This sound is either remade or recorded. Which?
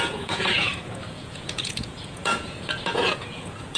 remade